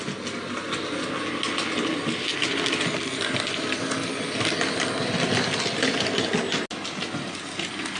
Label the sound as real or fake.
real